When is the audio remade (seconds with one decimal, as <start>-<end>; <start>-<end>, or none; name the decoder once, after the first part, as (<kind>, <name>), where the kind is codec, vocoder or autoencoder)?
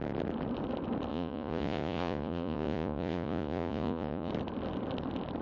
1.1-4.3 (vocoder, Vocos)